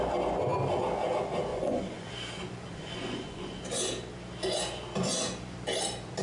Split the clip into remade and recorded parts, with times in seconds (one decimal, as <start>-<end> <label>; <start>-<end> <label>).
0.0-1.5 recorded; 1.5-2.1 remade; 2.1-2.7 recorded; 2.7-3.6 remade; 3.6-6.2 recorded